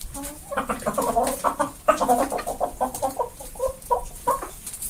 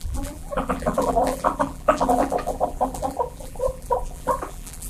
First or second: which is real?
first